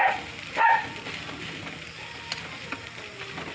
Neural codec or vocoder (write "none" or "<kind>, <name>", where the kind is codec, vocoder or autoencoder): none